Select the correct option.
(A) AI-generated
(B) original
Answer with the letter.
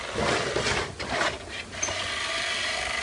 B